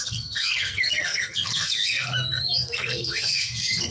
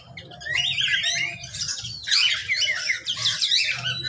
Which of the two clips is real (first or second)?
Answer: second